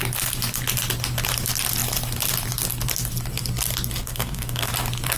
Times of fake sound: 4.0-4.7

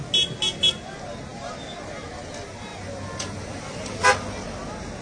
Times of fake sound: none

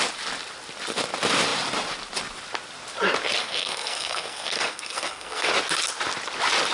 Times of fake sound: 3.4-5.5

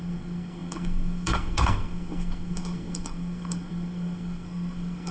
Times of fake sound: 0.0-5.1